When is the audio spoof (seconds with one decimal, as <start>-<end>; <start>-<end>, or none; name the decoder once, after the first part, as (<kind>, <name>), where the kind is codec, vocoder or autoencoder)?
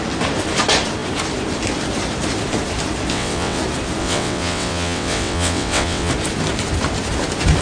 3.1-3.6 (vocoder, WaveNeXt); 4.0-6.1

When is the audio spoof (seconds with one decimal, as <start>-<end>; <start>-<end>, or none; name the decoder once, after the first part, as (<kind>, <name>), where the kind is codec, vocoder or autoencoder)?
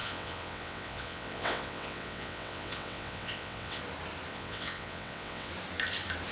0.0-3.8 (vocoder, WaveNeXt); 4.3-5.5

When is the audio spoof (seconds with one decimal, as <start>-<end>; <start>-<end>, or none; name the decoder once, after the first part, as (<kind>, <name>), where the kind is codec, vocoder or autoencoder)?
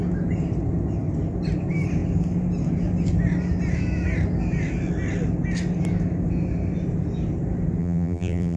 7.8-8.6 (vocoder, BigVGAN v2)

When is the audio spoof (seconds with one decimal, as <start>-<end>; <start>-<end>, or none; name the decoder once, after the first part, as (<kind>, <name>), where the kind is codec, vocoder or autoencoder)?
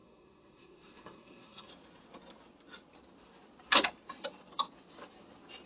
0.0-1.7 (codec, SNAC)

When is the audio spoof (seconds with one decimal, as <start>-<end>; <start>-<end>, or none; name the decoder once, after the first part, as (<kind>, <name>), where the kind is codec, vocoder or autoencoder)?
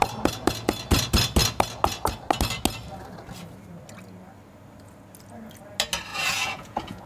6.1-7.1 (vocoder, Vocos)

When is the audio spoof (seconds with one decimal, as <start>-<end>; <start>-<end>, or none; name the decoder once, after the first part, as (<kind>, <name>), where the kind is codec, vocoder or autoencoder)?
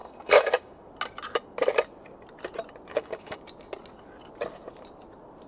0.0-0.8 (codec, DAC); 2.9-3.4